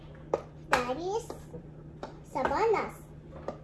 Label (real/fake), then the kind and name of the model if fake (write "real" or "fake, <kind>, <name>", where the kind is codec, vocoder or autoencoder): real